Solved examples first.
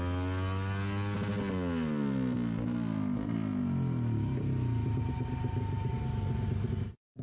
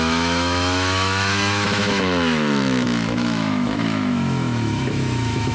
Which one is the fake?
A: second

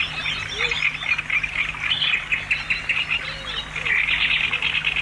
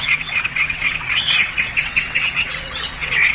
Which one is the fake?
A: second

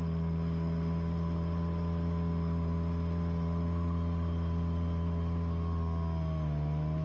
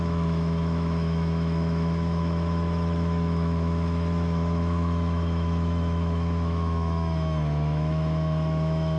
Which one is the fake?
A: second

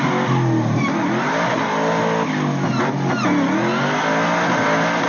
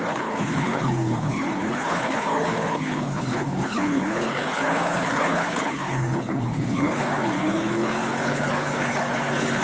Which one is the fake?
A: second